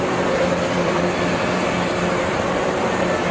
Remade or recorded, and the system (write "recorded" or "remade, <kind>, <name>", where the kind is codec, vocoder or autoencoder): remade, vocoder, BigVGAN v2